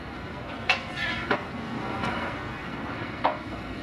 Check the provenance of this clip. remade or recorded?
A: remade